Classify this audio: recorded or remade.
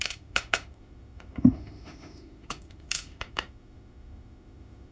remade